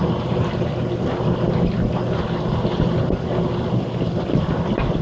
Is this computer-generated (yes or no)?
no